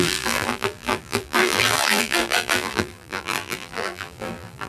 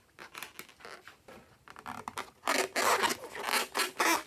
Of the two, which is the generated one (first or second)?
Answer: first